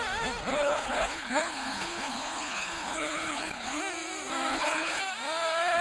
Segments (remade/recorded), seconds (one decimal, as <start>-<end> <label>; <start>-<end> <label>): 0.0-0.5 recorded; 0.5-3.8 remade; 3.8-4.5 recorded; 4.5-5.0 remade; 5.0-5.8 recorded